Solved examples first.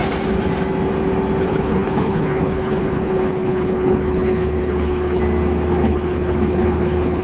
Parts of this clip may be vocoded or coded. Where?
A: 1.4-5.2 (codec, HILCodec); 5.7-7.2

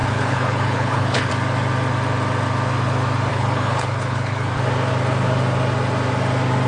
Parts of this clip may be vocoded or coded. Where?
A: 0.0-1.3 (codec, HILCodec); 3.3-4.5

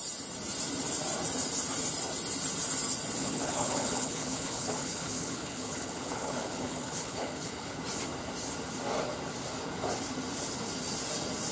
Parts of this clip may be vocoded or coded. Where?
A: 3.2-7.8 (codec, HILCodec)